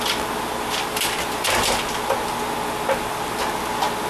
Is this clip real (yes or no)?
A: yes